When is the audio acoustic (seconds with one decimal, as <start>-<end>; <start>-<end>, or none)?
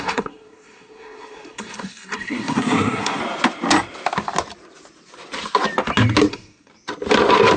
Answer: 3.2-6.3; 6.7-7.6